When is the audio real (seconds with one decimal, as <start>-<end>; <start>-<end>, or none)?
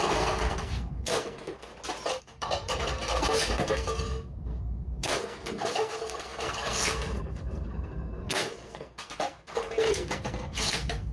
1.7-2.2